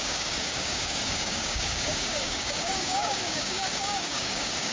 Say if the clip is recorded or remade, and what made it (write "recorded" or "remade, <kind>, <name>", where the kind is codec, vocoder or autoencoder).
remade, codec, DAC